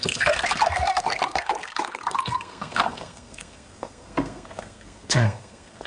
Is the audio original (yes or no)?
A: no